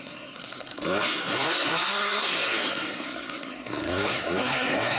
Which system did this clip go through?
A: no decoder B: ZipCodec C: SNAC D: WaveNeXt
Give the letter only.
C